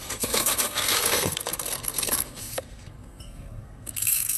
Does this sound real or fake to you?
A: fake